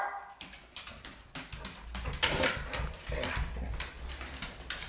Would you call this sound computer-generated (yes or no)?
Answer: no